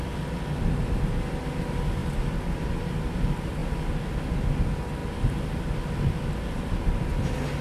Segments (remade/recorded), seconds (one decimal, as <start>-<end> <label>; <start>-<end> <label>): 0.0-2.0 recorded; 2.0-2.7 remade; 2.7-7.6 recorded